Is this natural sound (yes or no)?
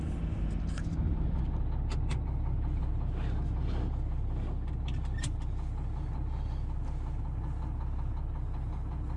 yes